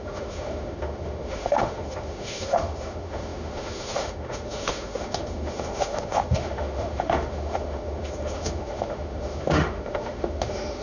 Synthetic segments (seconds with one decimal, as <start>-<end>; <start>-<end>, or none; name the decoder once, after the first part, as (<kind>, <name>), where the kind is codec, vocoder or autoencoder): 0.0-10.8 (autoencoder, DAC-VAE)